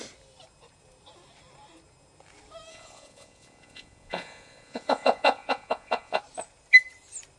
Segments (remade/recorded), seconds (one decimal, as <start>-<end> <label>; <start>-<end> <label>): 0.0-2.7 recorded; 2.7-6.2 remade; 6.2-7.4 recorded